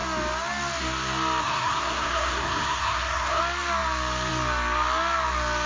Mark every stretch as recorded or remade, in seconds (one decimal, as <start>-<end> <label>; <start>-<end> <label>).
0.0-1.4 recorded; 1.4-3.4 remade; 3.4-5.7 recorded